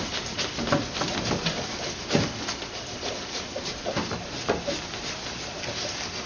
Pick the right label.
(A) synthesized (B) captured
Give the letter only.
B